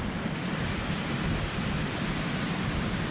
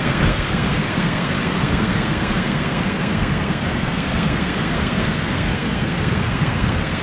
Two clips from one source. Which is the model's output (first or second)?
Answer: second